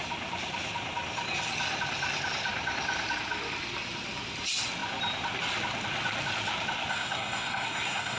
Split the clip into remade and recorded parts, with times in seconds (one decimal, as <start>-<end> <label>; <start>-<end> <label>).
0.0-6.9 recorded; 6.9-8.2 remade

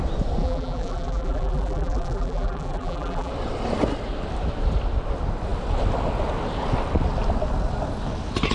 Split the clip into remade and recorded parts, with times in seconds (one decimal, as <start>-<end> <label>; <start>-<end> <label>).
0.0-0.4 recorded; 0.4-3.3 remade; 3.3-8.5 recorded

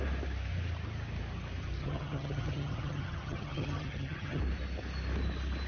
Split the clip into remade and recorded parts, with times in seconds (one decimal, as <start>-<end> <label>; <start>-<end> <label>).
0.0-1.8 recorded; 1.8-4.4 remade; 4.4-5.7 recorded

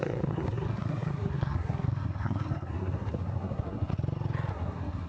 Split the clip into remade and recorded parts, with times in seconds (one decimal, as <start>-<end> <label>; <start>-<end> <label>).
0.0-3.9 remade; 3.9-4.5 recorded; 4.5-5.1 remade